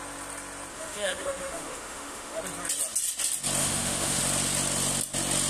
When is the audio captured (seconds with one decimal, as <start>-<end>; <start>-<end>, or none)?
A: 0.0-0.7; 2.4-3.6; 4.2-5.5